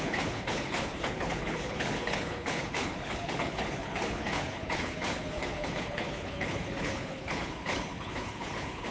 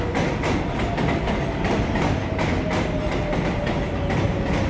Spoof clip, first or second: first